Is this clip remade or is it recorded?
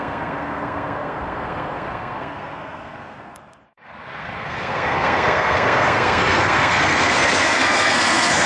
remade